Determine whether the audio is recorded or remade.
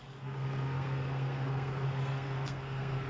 remade